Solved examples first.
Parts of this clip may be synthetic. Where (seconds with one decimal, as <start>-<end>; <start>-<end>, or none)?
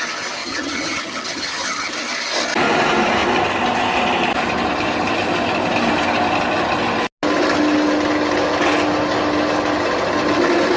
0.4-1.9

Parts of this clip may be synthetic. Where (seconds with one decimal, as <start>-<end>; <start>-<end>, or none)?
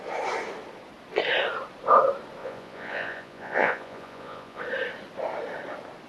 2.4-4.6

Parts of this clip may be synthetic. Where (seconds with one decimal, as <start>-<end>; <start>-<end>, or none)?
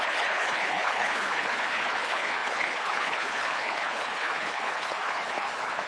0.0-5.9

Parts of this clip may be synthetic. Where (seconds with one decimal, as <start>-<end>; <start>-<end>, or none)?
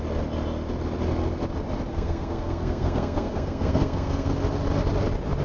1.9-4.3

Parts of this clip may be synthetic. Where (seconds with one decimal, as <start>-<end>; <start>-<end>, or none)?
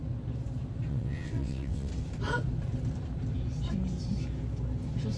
0.9-1.9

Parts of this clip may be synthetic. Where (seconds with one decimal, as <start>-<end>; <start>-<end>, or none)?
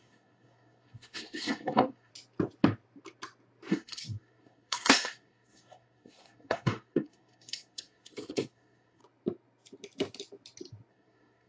0.0-2.1; 3.7-9.0; 10.9-11.5